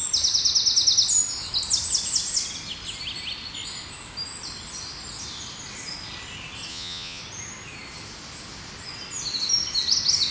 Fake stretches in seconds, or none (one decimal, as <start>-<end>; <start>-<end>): 6.7-7.2